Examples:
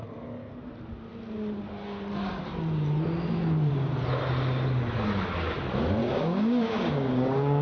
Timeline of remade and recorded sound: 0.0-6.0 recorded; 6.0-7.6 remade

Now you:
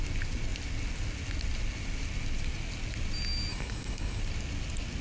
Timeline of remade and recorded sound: 0.0-3.5 recorded; 3.5-4.2 remade; 4.2-5.0 recorded

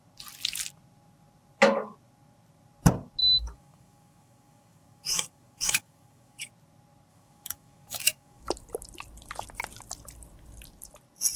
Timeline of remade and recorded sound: 0.0-3.2 recorded; 3.2-6.5 remade; 6.5-7.1 recorded; 7.1-8.5 remade; 8.5-11.4 recorded

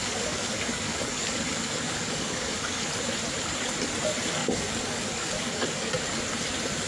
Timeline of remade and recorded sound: 0.0-2.9 remade; 2.9-4.4 recorded; 4.4-5.9 remade; 5.9-6.9 recorded